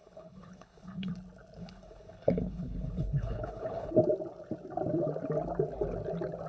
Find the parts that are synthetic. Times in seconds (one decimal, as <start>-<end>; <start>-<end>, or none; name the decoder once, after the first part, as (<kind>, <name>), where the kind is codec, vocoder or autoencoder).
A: 0.0-1.1 (codec, HILCodec); 1.6-3.9